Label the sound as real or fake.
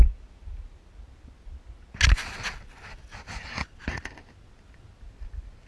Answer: real